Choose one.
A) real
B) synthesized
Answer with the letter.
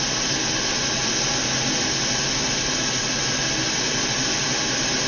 A